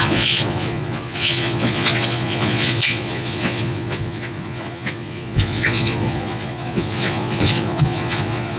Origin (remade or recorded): remade